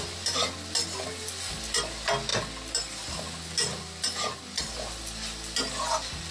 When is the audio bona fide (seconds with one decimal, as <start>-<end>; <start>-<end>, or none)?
0.0-6.3